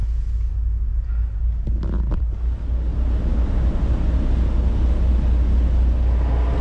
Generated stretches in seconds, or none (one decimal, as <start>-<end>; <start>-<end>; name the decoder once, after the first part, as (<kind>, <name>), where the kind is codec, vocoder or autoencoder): none